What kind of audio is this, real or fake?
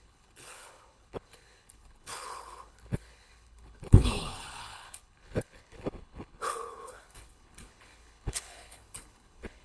fake